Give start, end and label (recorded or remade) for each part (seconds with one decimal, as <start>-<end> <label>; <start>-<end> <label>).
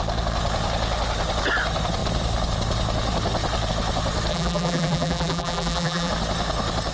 0.0-4.3 recorded; 4.3-6.1 remade; 6.1-6.9 recorded